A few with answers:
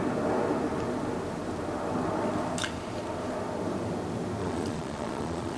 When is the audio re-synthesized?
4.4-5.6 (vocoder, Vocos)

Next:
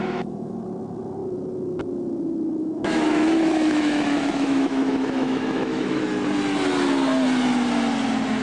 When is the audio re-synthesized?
0.0-0.6 (autoencoder, DAC-VAE); 2.6-6.0

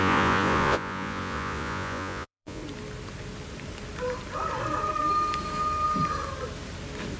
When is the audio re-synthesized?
0.0-2.6 (vocoder, Vocos)

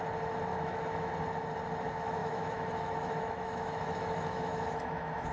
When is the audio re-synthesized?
0.5-1.1 (autoencoder, DAC-VAE); 2.2-5.3

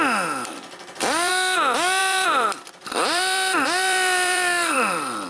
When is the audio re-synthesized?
0.5-1.3 (vocoder, BigVGAN v2); 2.0-5.3

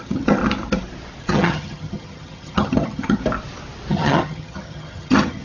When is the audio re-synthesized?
0.0-0.4 (vocoder, HiFi-GAN); 1.2-3.2; 3.9-5.4